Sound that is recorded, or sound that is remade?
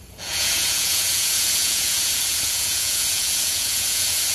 remade